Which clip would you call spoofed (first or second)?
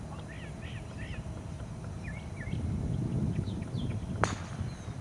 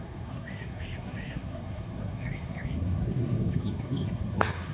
second